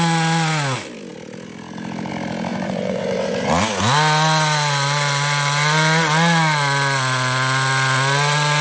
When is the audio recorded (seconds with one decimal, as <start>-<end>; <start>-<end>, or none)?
0.0-2.5; 3.5-8.6